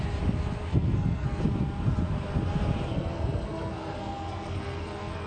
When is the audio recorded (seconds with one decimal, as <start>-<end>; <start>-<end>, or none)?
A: 0.0-0.7; 1.4-2.9

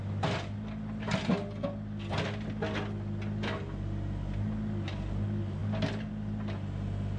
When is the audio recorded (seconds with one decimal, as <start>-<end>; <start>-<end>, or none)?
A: 0.0-7.2